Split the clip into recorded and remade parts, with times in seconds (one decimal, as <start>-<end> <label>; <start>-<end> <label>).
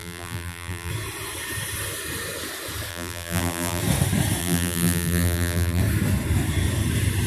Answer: 0.0-0.9 remade; 0.9-2.9 recorded; 2.9-3.8 remade; 3.8-4.4 recorded; 4.4-5.8 remade; 5.8-7.3 recorded